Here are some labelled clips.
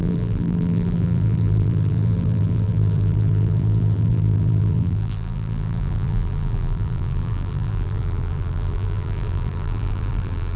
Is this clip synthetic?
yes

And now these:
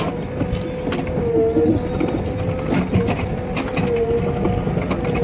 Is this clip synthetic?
no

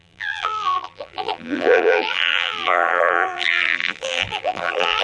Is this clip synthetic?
yes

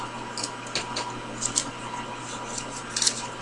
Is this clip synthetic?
no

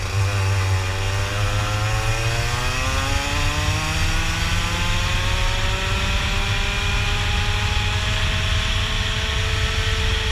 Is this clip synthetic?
no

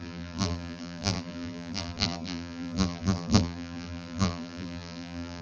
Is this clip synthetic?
yes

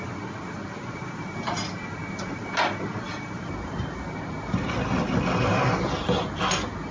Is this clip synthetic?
no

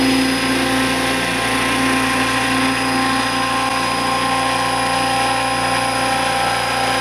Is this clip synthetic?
no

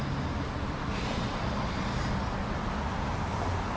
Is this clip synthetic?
no